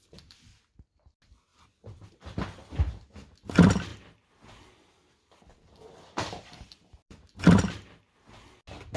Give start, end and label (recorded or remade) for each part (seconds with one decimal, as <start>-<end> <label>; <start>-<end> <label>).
0.0-1.5 recorded; 1.5-2.7 remade; 2.7-3.9 recorded; 3.9-7.4 remade; 7.4-9.0 recorded